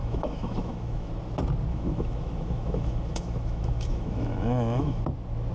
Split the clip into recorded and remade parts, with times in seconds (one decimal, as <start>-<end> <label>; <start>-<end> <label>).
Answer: 0.0-1.1 remade; 1.1-1.7 recorded; 1.7-5.0 remade; 5.0-5.5 recorded